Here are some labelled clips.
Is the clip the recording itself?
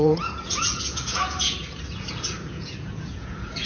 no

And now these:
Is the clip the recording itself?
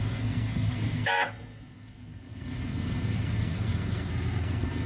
no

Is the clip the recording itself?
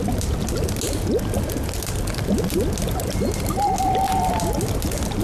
yes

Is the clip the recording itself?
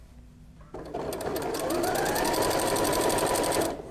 yes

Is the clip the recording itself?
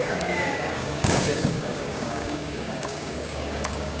no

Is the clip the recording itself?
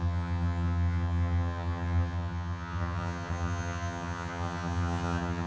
no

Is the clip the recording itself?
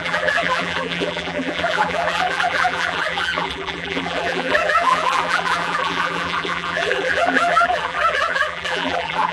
no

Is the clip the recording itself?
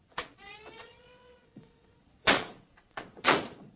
no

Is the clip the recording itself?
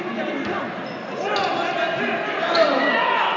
yes